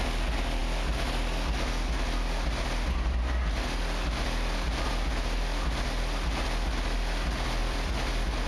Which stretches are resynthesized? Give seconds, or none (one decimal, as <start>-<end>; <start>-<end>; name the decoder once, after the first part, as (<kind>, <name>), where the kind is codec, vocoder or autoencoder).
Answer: 7.6-8.1 (vocoder, BigVGAN v2)